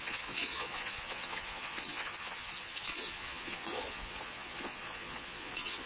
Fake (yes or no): yes